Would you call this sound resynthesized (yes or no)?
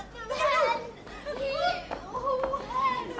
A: no